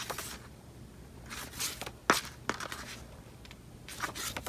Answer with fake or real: real